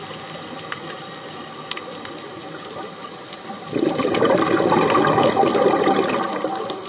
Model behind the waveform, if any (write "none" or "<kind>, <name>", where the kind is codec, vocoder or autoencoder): none